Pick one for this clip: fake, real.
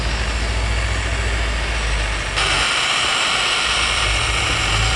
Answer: real